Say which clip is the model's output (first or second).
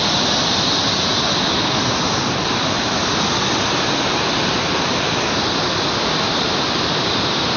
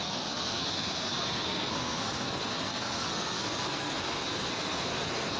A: second